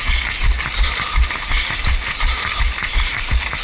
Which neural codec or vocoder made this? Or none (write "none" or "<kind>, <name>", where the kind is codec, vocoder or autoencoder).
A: none